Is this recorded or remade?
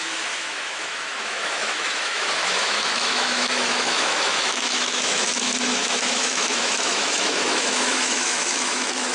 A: remade